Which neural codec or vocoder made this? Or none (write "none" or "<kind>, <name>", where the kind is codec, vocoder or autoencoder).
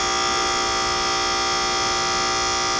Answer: none